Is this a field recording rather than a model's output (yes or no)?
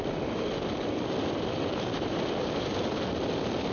yes